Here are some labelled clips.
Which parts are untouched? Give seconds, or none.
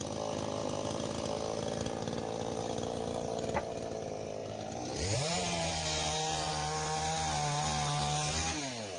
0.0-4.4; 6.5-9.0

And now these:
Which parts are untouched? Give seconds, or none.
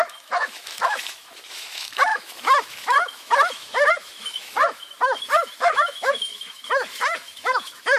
none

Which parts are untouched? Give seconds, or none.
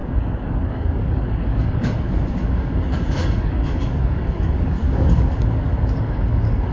none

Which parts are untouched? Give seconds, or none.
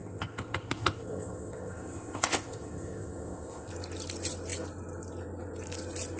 3.7-6.2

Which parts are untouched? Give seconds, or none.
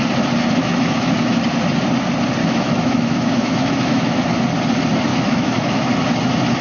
0.0-0.6; 1.4-2.4; 4.2-5.1; 5.9-6.6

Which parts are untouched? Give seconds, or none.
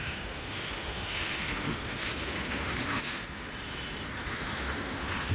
3.5-4.2